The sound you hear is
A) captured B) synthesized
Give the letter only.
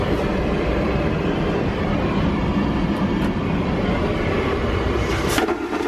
B